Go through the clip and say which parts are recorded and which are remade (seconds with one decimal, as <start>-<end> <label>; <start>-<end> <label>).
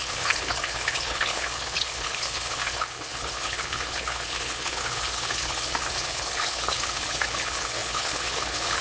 0.0-8.8 remade